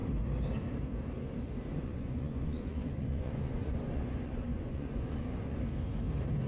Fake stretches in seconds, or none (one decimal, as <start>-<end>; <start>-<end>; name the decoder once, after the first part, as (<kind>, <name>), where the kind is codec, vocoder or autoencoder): 1.7-5.6 (vocoder, Vocos)